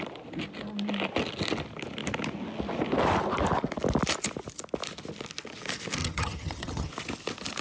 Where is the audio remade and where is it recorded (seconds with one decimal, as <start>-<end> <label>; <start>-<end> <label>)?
0.0-6.0 recorded; 6.0-6.9 remade; 6.9-7.6 recorded